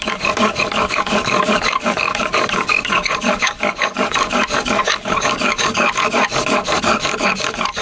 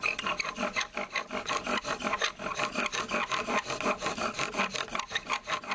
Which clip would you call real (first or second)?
second